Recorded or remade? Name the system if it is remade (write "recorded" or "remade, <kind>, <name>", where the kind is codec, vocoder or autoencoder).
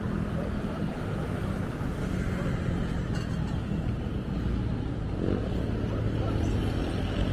recorded